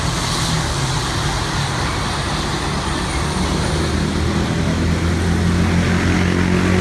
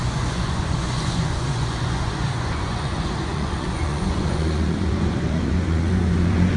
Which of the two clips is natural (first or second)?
first